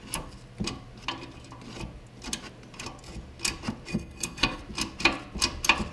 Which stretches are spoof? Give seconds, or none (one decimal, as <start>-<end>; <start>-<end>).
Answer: 3.9-4.6